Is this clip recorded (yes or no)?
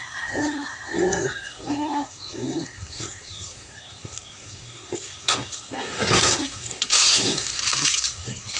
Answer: no